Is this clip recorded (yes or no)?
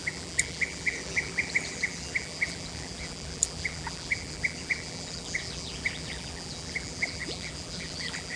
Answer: no